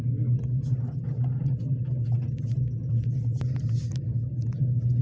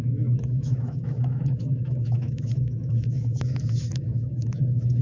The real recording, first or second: first